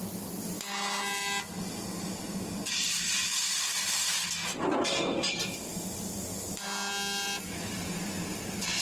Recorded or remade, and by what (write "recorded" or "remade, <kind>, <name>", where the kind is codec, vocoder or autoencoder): recorded